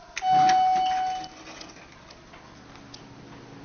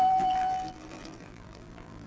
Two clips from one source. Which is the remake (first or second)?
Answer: second